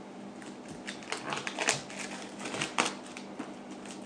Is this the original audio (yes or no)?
yes